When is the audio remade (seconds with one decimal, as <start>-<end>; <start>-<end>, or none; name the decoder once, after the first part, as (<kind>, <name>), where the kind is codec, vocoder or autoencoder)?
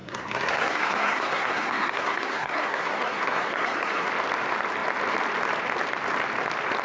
0.0-4.1 (codec, SNAC)